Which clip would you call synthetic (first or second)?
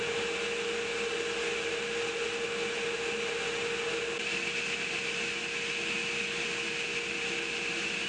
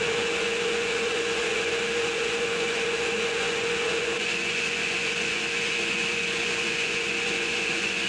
second